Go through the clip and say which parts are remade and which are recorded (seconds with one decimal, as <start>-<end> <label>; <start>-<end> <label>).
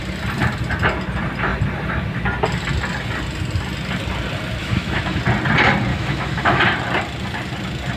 0.0-4.6 recorded; 4.6-5.2 remade; 5.2-5.9 recorded; 5.9-6.6 remade; 6.6-8.0 recorded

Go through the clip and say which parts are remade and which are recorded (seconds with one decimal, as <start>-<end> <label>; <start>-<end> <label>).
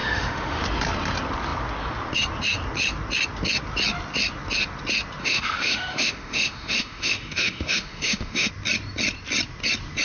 0.0-0.6 remade; 0.6-5.2 recorded; 5.2-8.5 remade; 8.5-10.0 recorded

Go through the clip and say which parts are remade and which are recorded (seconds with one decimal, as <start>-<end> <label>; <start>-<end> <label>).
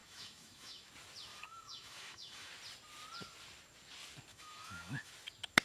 0.0-0.9 remade; 0.9-1.3 recorded; 1.3-2.5 remade; 2.5-4.3 recorded; 4.3-5.1 remade; 5.1-5.6 recorded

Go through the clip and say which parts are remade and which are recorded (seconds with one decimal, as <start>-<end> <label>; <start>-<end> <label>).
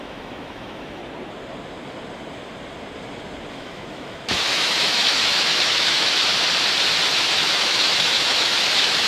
0.0-1.0 remade; 1.0-3.5 recorded; 3.5-6.3 remade; 6.3-7.1 recorded; 7.1-9.1 remade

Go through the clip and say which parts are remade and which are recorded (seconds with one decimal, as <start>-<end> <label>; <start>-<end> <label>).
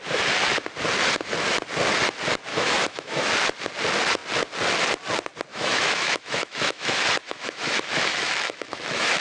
0.0-2.5 recorded; 2.5-3.3 remade; 3.3-5.5 recorded; 5.5-9.2 remade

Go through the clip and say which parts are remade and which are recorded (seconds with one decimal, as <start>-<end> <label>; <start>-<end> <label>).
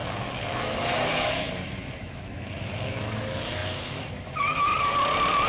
0.0-4.7 remade; 4.7-5.5 recorded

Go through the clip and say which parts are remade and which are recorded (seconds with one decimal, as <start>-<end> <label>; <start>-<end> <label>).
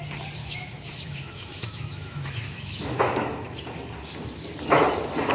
0.0-0.4 recorded; 0.4-3.6 remade; 3.6-5.3 recorded